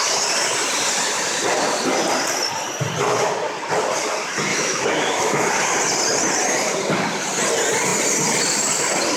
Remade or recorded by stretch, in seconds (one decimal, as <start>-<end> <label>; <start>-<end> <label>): 0.0-4.5 recorded; 4.5-5.5 remade; 5.5-9.2 recorded